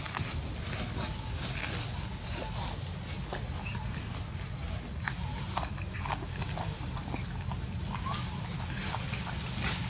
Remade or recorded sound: recorded